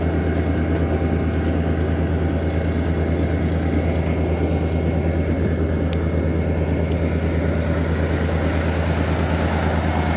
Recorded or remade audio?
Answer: recorded